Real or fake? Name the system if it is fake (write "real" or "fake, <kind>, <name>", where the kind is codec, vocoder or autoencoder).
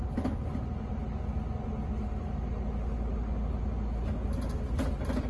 real